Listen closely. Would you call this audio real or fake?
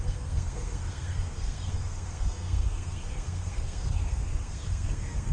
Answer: fake